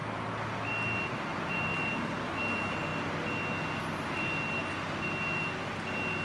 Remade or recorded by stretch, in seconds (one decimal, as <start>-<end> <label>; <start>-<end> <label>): 0.0-1.3 recorded; 1.3-2.4 remade; 2.4-6.2 recorded